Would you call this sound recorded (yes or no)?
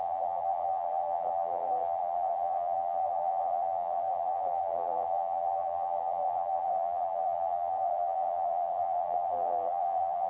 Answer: no